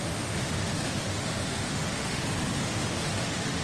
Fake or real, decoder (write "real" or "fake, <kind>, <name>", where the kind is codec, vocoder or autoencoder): fake, autoencoder, DAC-VAE